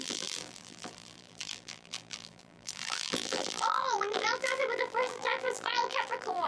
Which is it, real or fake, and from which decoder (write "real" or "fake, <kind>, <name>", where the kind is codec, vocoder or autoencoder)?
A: fake, vocoder, BigVGAN v2